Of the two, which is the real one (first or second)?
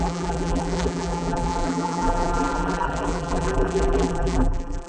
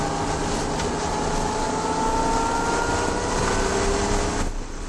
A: second